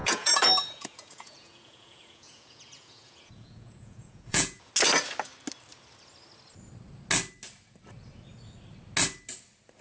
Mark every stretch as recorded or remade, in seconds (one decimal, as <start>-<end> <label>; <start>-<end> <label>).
0.0-4.7 remade; 4.7-9.8 recorded